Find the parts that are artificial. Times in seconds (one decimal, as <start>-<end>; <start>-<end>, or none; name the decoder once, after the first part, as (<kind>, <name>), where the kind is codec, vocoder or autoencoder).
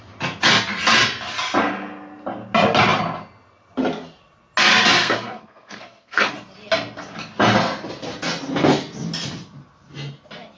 5.0-6.3 (codec, SNAC)